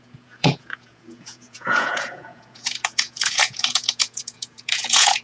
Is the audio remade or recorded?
remade